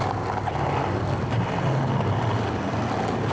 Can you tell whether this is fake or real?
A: real